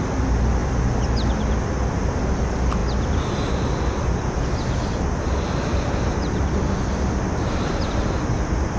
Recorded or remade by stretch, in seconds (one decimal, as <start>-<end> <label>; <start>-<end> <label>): 0.0-8.8 recorded